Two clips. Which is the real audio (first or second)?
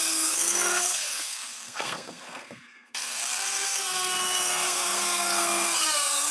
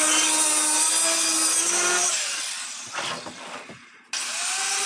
second